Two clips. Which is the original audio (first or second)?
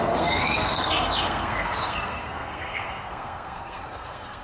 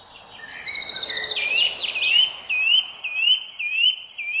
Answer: second